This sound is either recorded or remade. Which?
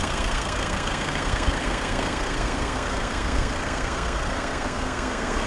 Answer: remade